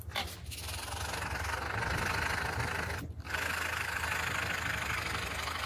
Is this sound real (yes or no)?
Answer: yes